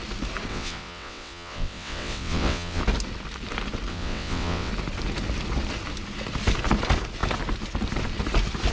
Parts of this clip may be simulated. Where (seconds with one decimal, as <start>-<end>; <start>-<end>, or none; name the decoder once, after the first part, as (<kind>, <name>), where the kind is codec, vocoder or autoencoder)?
0.5-2.8 (vocoder, WaveNeXt); 3.9-4.7